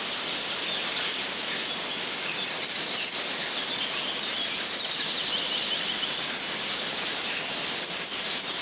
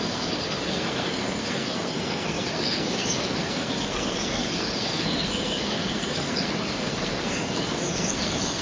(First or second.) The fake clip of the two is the second